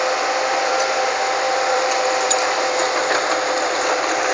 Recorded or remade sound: remade